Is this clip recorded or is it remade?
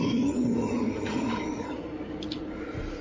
recorded